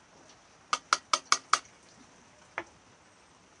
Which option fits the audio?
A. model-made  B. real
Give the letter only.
B